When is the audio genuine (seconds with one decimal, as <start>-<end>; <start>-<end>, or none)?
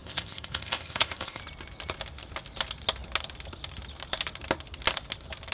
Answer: 1.4-5.5